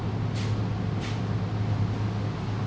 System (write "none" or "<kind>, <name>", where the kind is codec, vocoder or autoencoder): none